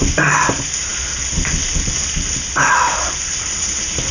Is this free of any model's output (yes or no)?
yes